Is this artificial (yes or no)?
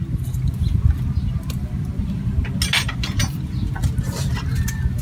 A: no